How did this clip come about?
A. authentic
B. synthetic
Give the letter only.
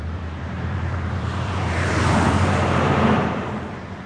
B